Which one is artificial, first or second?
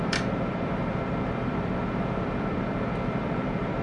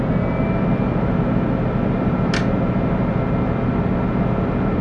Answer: first